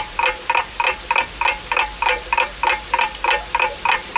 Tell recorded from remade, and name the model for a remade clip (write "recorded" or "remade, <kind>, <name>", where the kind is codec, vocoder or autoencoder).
recorded